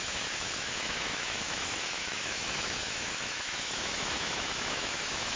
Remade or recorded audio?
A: remade